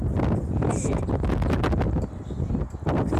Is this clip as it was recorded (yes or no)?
yes